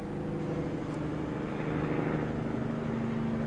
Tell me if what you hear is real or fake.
real